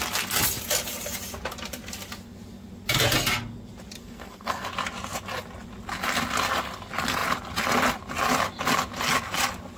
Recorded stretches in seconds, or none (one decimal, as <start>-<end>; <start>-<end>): 0.0-4.0; 4.7-9.8